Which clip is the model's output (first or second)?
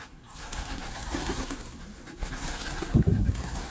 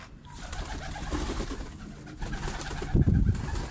first